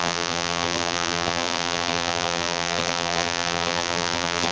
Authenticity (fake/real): fake